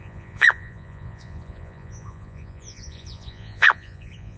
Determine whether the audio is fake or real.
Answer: fake